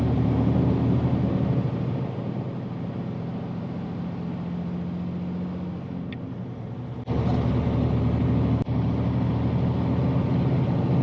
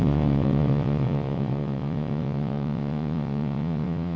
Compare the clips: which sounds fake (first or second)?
second